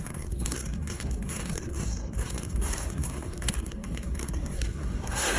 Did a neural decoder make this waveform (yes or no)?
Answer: yes